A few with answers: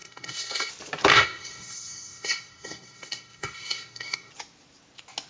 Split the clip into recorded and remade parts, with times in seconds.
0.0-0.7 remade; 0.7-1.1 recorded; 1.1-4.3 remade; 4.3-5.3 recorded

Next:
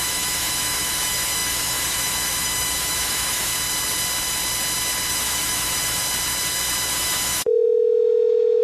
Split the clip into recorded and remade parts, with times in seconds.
0.0-3.5 remade; 3.5-5.1 recorded; 5.1-6.0 remade; 6.0-6.9 recorded; 6.9-8.6 remade

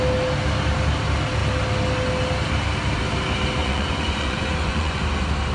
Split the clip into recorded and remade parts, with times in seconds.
0.0-3.6 recorded; 3.6-5.0 remade; 5.0-5.5 recorded

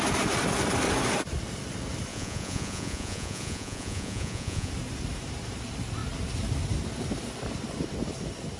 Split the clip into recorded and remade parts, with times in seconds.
0.0-2.1 recorded; 2.1-4.7 remade; 4.7-8.6 recorded

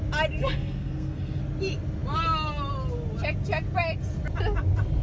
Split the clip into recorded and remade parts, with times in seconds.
0.0-0.4 recorded; 0.4-1.4 remade; 1.4-5.0 recorded

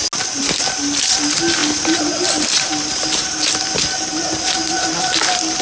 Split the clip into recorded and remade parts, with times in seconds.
0.0-5.6 recorded

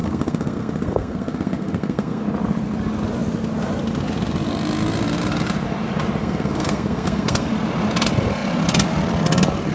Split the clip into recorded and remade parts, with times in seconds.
0.0-2.2 remade; 2.2-6.2 recorded; 6.2-7.5 remade; 7.5-9.7 recorded